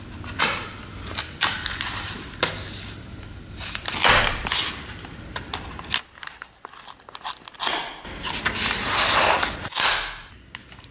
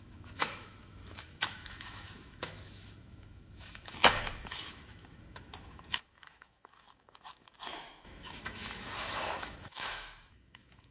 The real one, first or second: first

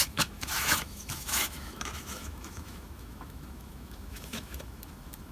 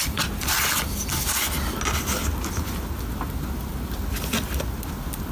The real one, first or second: second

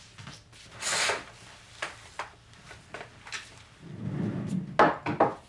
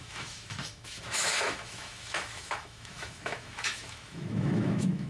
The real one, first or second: first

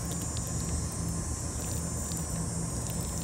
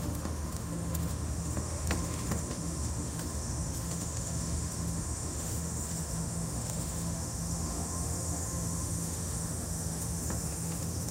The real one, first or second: first